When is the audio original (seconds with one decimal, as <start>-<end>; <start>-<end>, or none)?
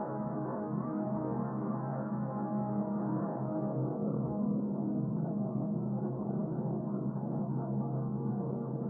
none